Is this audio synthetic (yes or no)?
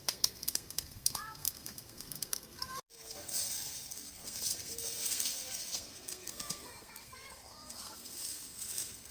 yes